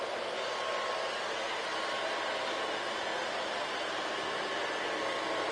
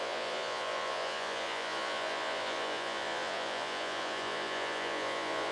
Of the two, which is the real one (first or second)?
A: first